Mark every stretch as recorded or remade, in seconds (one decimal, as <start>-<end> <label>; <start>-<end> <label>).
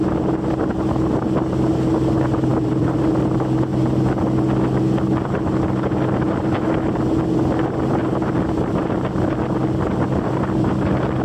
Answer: 0.0-2.5 recorded; 2.5-3.1 remade; 3.1-11.2 recorded